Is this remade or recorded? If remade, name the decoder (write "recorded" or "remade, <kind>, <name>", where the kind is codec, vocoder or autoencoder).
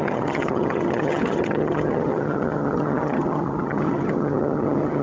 remade, vocoder, HiFi-GAN